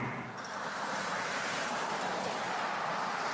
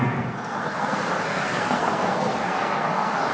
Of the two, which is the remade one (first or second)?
second